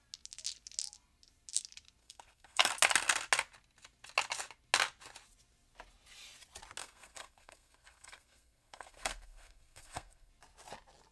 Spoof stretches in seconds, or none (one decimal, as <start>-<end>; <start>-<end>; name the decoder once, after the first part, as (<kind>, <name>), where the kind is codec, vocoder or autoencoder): 2.0-2.7 (codec, SNAC); 6.8-10.3